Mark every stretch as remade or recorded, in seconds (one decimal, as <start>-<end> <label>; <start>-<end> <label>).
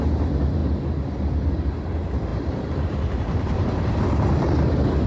0.0-2.3 recorded; 2.3-4.0 remade; 4.0-5.1 recorded